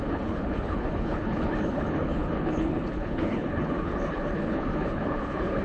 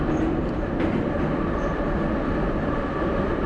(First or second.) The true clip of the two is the second